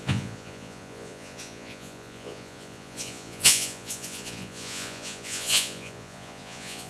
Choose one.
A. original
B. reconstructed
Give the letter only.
B